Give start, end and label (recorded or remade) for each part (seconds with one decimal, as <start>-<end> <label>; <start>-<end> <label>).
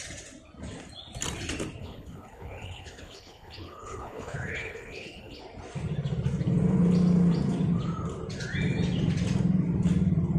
0.0-1.8 recorded; 1.8-5.4 remade; 5.4-10.4 recorded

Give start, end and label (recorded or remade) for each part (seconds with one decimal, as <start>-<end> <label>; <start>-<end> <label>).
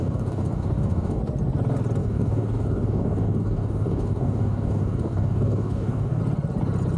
0.0-1.2 remade; 1.2-2.0 recorded; 2.0-6.2 remade; 6.2-7.0 recorded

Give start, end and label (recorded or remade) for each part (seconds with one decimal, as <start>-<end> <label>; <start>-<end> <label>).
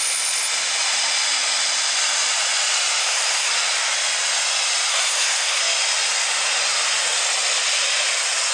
0.0-3.0 recorded; 3.0-3.5 remade; 3.5-4.9 recorded; 4.9-5.6 remade; 5.6-8.5 recorded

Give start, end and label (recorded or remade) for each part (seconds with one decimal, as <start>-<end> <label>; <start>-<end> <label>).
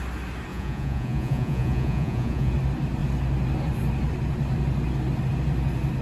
0.0-0.5 recorded; 0.5-2.5 remade; 2.5-6.0 recorded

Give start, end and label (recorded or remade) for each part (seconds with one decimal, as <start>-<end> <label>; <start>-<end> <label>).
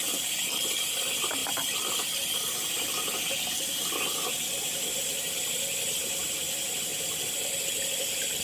0.0-8.4 recorded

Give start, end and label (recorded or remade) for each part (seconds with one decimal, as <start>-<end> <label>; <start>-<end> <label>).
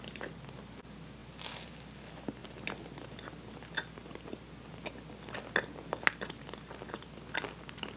0.0-8.0 recorded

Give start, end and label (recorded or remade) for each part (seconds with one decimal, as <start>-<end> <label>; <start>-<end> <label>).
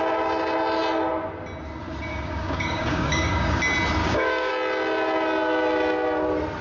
0.0-2.1 recorded; 2.1-3.6 remade; 3.6-4.0 recorded; 4.0-4.5 remade; 4.5-6.6 recorded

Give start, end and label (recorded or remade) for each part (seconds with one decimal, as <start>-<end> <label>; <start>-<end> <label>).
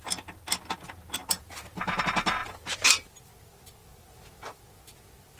0.0-2.4 recorded; 2.4-3.1 remade; 3.1-3.8 recorded; 3.8-4.6 remade; 4.6-5.4 recorded